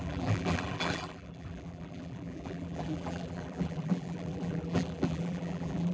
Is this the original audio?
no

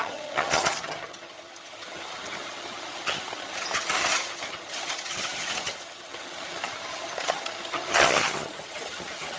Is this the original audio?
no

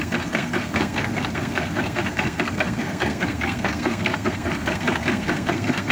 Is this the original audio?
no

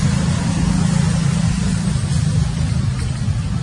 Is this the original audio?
yes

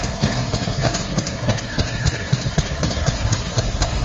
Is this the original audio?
no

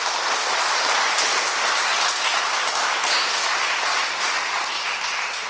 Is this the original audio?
yes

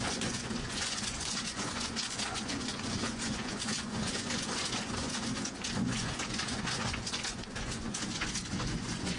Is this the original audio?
no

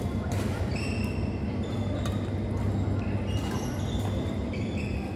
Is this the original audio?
yes